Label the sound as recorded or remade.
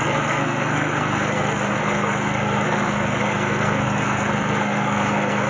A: remade